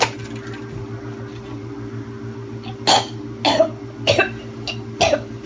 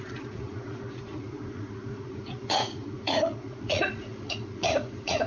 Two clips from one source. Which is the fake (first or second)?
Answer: second